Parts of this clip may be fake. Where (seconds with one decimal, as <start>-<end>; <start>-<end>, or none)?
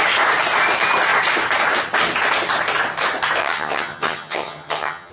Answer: 3.4-5.1